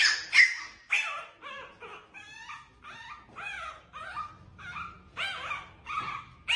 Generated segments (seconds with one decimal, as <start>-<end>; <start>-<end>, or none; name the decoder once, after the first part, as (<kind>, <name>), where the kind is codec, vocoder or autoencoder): none